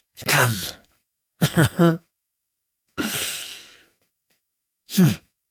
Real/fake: fake